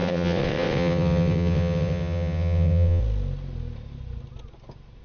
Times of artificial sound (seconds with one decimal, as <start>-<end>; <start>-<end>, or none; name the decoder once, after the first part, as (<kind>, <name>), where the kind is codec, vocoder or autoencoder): 0.0-3.0 (vocoder, WaveNeXt)